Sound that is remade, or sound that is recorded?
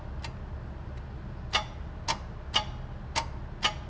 recorded